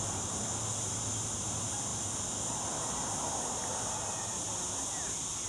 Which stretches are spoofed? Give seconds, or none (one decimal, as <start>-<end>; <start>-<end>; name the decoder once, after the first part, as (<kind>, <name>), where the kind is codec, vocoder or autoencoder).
none

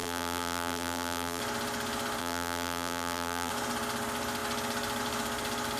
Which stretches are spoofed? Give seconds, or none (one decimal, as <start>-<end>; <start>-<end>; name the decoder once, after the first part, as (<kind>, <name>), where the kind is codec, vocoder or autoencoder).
0.0-1.4 (vocoder, BigVGAN v2); 2.2-3.5

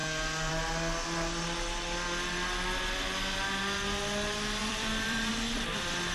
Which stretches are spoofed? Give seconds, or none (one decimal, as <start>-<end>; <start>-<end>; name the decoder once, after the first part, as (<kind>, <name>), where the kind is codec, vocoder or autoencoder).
4.6-5.3 (vocoder, BigVGAN v2)

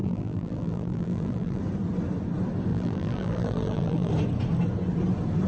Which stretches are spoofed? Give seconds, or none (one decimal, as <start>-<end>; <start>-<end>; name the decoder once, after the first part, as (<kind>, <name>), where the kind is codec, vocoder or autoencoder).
0.0-1.6 (vocoder, BigVGAN v2); 2.7-4.1

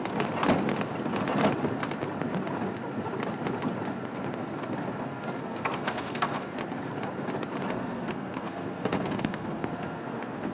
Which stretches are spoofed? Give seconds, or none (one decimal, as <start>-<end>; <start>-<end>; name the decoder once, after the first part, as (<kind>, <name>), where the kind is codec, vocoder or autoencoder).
5.0-6.6 (codec, SNAC); 7.7-10.5